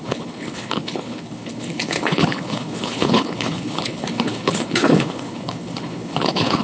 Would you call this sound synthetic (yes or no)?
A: yes